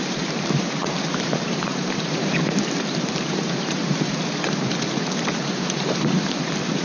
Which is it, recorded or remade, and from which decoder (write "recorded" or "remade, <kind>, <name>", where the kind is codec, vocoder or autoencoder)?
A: remade, vocoder, BigVGAN v2